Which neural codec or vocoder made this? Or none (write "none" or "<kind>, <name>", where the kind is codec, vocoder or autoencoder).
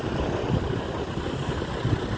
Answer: none